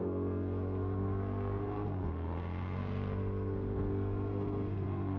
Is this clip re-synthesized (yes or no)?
yes